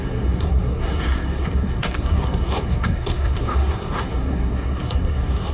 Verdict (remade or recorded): remade